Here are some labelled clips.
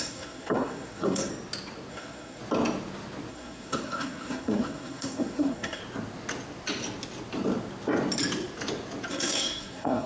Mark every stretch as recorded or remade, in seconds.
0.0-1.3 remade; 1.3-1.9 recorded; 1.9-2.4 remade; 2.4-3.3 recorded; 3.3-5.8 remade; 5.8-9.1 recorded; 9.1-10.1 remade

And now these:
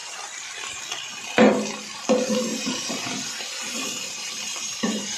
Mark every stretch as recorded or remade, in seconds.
0.0-2.5 recorded; 2.5-5.2 remade

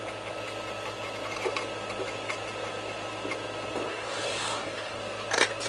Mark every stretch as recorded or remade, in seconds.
0.0-3.9 recorded; 3.9-5.0 remade; 5.0-5.7 recorded

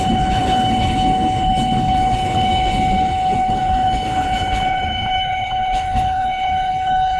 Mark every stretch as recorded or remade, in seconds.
0.0-7.2 remade

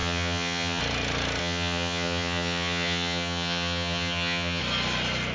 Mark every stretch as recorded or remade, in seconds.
0.0-0.8 remade; 0.8-1.4 recorded; 1.4-4.6 remade; 4.6-5.3 recorded

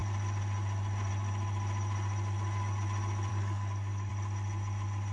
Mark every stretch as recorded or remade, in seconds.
0.0-3.3 recorded; 3.3-4.1 remade; 4.1-5.1 recorded